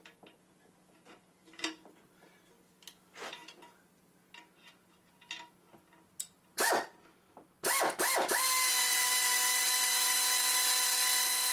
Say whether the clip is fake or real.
real